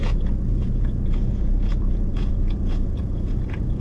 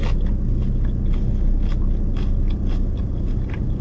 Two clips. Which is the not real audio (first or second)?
first